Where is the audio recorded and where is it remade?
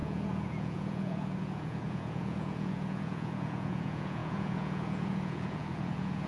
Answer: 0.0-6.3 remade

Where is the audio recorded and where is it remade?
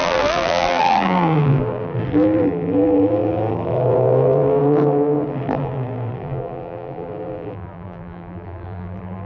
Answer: 0.0-9.3 remade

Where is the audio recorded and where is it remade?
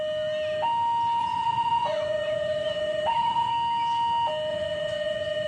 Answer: 0.0-1.2 recorded; 1.2-3.5 remade; 3.5-4.5 recorded; 4.5-5.5 remade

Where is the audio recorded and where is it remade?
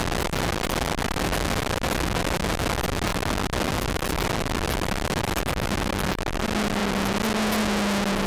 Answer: 0.0-8.3 recorded